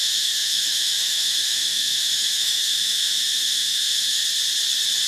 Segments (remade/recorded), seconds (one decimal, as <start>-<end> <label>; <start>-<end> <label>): 0.0-4.2 remade; 4.2-5.1 recorded